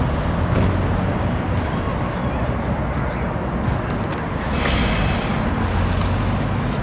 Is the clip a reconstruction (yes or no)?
no